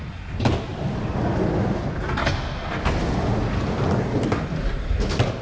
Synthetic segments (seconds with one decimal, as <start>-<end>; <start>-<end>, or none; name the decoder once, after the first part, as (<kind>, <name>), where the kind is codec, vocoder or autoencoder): none